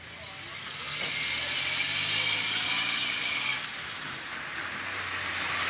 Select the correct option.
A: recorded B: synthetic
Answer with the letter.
A